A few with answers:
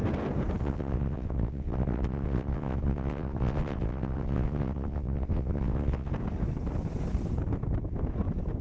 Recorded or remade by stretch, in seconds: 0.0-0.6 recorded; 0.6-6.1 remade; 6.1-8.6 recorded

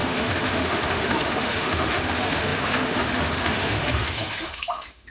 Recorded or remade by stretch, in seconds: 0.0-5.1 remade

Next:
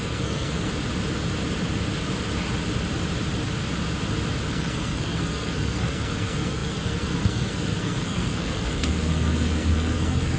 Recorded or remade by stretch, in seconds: 0.0-0.7 remade; 0.7-4.5 recorded; 4.5-10.4 remade